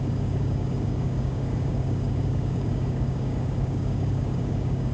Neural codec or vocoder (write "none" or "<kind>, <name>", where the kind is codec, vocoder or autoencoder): codec, DAC